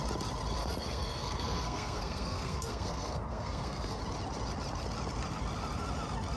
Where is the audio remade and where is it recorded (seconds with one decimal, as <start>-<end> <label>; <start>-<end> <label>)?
0.0-0.6 recorded; 0.6-4.0 remade; 4.0-6.4 recorded